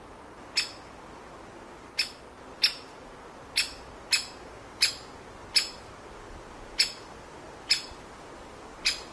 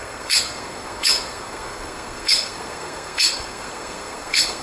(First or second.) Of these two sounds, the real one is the first